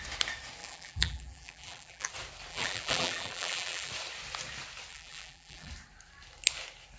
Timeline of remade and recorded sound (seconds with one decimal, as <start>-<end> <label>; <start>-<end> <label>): 0.0-0.6 recorded; 0.6-2.1 remade; 2.1-2.5 recorded; 2.5-3.9 remade; 3.9-4.9 recorded; 4.9-5.7 remade; 5.7-7.0 recorded